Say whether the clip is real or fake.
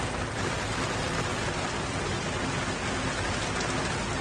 real